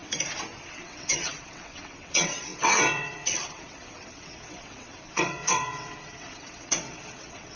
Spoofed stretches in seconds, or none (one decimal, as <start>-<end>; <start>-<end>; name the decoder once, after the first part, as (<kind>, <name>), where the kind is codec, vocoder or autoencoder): 0.7-7.6 (vocoder, WaveNeXt)